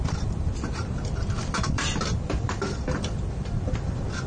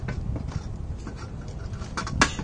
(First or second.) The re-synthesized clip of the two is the first